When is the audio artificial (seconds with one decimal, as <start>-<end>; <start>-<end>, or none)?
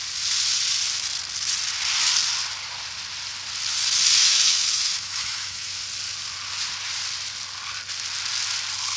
4.2-5.8